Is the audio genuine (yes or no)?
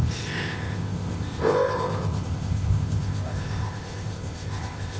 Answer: no